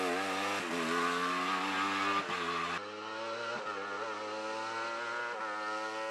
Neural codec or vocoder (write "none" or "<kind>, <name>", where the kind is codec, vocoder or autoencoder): none